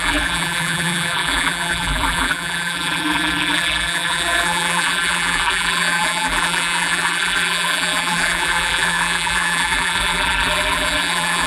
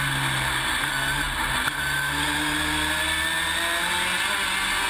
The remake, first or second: first